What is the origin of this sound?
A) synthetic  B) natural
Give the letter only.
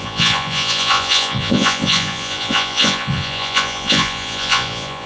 A